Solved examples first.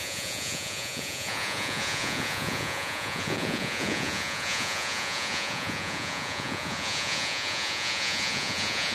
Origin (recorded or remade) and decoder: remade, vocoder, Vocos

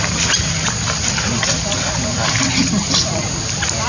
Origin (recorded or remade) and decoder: recorded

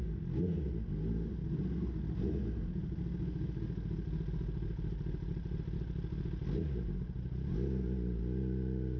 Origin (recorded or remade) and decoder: recorded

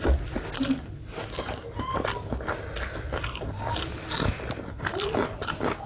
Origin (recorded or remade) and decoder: recorded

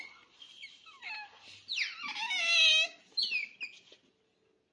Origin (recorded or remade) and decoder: recorded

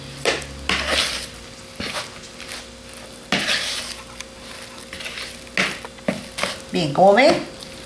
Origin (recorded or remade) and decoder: recorded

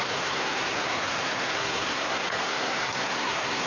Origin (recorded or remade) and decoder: remade, codec, SNAC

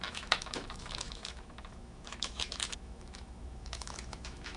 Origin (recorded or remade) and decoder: remade, autoencoder, DAC-VAE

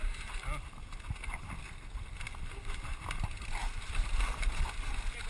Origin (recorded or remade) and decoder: recorded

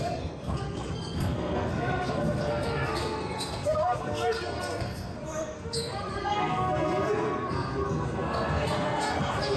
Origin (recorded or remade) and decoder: remade, codec, SNAC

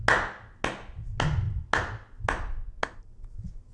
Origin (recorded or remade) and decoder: recorded